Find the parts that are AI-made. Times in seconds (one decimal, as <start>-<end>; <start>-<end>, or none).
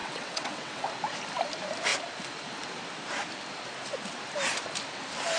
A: 0.0-0.9